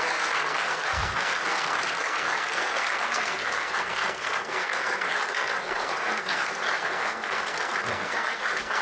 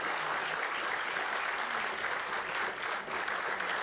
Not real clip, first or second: first